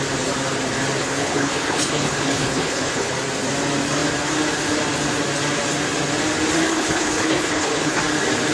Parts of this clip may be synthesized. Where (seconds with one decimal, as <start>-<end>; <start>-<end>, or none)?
1.0-3.1; 6.7-8.0